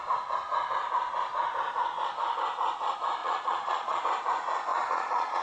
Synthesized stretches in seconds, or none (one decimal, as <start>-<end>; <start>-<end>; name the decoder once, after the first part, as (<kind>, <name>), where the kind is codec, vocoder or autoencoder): 3.2-4.0 (vocoder, Vocos); 4.7-5.4

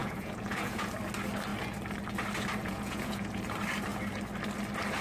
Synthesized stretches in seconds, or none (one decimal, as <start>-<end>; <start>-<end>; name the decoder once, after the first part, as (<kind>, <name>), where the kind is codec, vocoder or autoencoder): 0.0-0.9 (vocoder, Vocos); 2.6-3.4